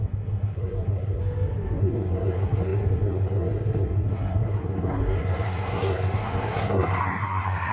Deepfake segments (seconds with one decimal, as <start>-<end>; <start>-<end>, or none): 0.0-1.2; 1.8-7.7